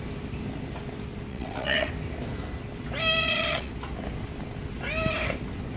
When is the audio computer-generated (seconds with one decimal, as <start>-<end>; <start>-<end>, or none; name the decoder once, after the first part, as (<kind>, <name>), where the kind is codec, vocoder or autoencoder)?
1.3-1.9 (vocoder, WaveNeXt); 3.2-3.7